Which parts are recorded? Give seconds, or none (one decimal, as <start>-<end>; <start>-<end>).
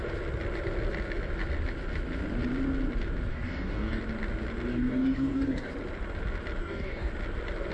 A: 0.0-3.3; 4.0-4.7; 5.7-6.6; 7.1-7.7